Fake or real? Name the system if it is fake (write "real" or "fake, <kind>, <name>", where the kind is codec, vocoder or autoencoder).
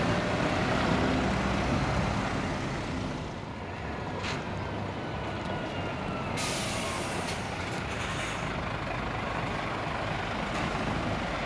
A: real